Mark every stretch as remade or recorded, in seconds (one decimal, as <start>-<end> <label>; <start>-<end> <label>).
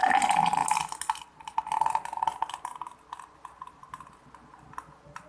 0.0-5.3 recorded